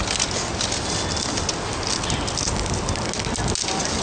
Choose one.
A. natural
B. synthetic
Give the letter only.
A